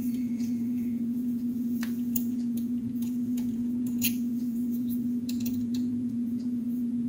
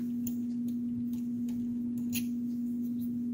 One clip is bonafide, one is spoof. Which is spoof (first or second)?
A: first